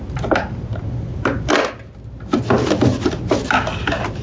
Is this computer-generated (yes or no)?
no